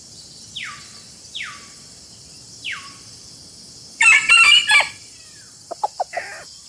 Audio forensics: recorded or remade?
remade